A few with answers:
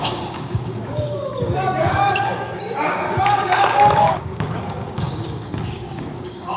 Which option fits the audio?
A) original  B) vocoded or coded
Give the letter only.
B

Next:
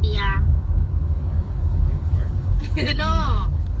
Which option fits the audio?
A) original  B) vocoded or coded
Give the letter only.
B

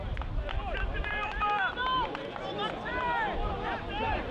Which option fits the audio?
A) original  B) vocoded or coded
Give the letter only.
A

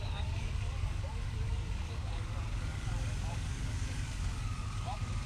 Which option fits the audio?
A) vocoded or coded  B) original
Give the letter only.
A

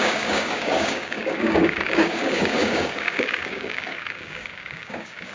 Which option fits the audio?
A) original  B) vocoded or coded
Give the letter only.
B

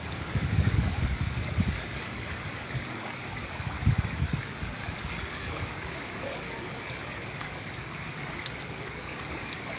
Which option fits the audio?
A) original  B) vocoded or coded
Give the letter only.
B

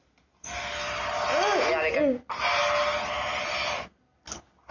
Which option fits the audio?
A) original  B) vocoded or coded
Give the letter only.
A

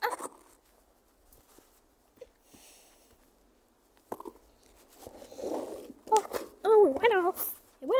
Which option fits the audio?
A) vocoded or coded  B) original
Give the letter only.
B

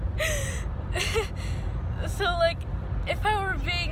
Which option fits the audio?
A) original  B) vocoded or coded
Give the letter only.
A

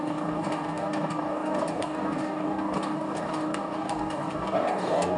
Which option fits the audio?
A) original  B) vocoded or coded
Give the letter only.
B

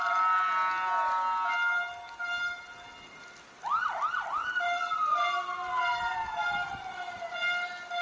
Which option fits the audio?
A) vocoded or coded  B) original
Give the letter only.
B